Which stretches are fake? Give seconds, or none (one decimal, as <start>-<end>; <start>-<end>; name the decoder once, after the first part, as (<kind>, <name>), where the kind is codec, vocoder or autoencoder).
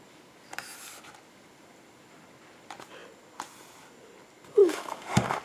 4.6-5.4 (autoencoder, DAC-VAE)